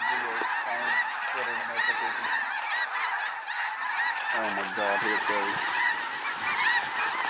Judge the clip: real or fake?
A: real